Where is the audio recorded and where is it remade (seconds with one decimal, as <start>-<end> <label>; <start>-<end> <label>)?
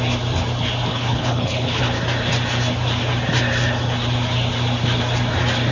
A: 0.0-0.9 recorded; 0.9-1.8 remade; 1.8-5.7 recorded